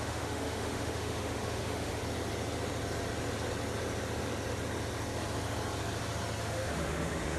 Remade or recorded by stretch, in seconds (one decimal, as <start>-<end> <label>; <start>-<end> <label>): 0.0-2.0 remade; 2.0-6.4 recorded; 6.4-7.4 remade